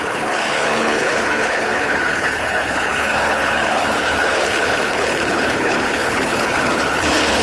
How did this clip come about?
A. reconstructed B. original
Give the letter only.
A